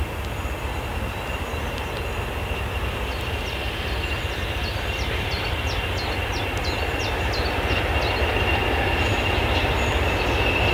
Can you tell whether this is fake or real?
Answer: real